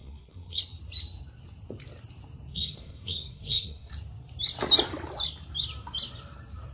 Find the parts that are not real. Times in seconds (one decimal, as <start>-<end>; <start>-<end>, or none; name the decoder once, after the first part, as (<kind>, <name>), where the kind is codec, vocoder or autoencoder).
0.0-0.6 (codec, SNAC); 2.5-3.9